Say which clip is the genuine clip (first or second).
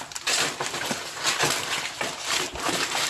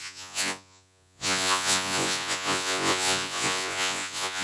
first